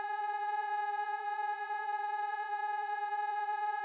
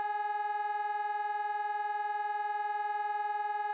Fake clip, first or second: first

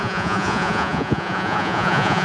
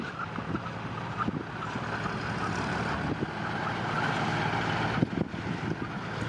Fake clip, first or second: first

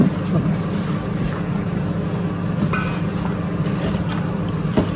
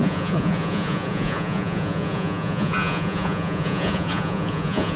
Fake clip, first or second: second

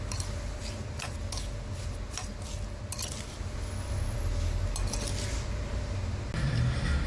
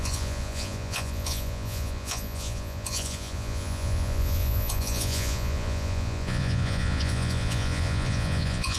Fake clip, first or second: second